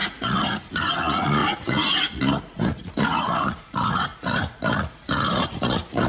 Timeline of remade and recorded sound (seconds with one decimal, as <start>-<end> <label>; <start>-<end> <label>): 0.0-6.1 remade